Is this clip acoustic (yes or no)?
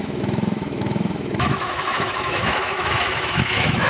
no